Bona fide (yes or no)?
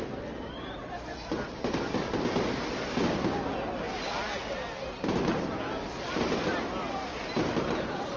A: yes